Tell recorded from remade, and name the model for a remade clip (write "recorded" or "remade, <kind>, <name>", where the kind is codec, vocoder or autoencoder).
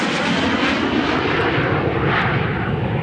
recorded